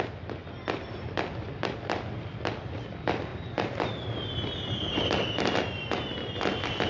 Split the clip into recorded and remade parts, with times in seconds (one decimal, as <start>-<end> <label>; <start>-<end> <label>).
0.0-6.9 recorded